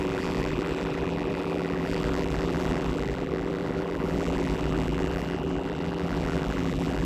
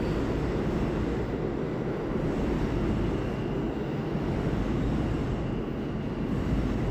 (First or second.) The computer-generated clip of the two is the first